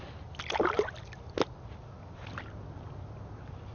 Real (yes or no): yes